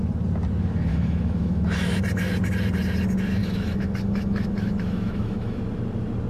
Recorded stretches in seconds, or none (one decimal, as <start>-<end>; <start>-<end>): 0.0-0.9; 2.0-3.4; 5.6-6.3